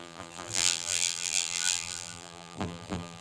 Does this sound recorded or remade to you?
remade